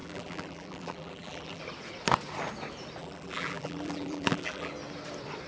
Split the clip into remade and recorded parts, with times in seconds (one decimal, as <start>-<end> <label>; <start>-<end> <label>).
0.0-1.6 remade; 1.6-3.0 recorded; 3.0-4.7 remade; 4.7-5.5 recorded